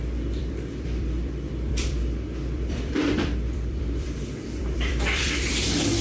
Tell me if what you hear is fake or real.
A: fake